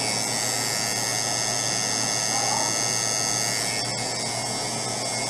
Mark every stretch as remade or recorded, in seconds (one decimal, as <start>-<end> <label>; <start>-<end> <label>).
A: 0.0-5.3 recorded